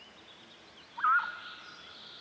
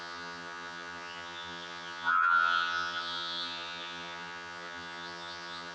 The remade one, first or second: second